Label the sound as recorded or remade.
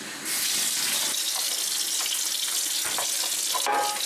recorded